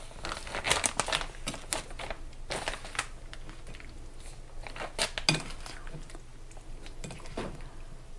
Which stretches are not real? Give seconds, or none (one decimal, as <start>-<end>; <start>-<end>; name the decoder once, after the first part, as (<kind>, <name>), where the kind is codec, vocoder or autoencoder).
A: none